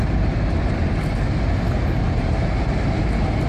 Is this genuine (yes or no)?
yes